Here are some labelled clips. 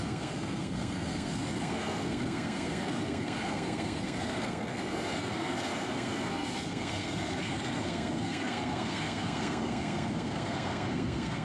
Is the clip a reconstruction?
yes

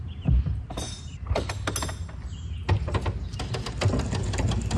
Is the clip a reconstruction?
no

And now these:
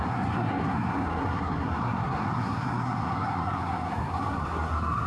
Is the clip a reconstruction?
yes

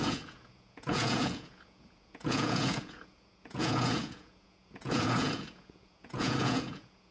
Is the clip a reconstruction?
yes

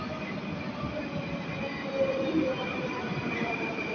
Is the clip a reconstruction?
no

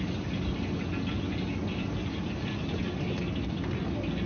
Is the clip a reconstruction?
no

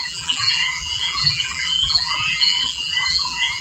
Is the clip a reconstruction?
yes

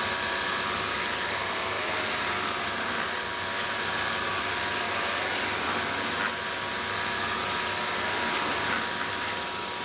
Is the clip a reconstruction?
no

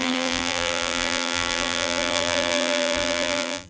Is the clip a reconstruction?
yes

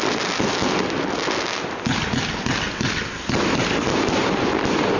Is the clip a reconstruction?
no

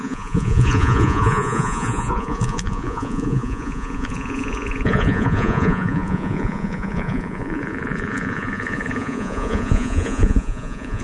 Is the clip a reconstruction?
yes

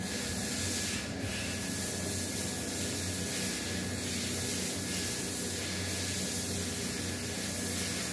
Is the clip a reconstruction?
no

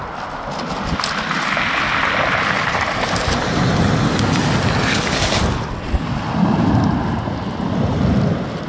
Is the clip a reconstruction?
no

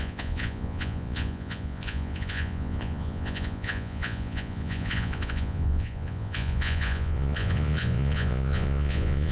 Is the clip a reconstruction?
yes